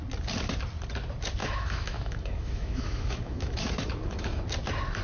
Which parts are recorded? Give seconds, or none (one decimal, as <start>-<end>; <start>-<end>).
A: 0.0-1.4; 4.4-5.0